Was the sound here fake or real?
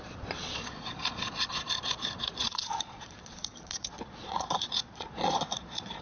fake